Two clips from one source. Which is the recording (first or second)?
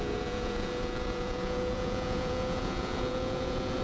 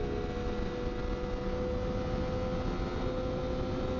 second